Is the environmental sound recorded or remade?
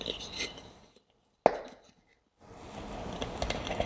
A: recorded